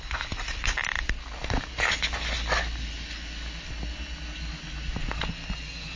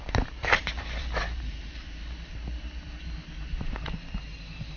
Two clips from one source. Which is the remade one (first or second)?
second